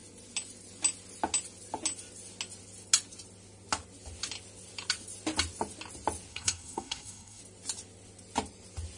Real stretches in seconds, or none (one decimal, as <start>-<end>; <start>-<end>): 0.0-6.3; 7.4-9.0